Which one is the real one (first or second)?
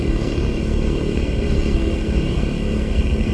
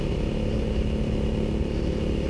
second